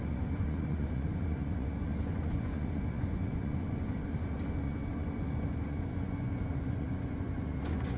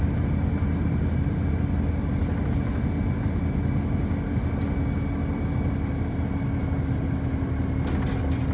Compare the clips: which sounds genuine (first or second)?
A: second